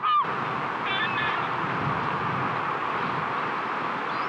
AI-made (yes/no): no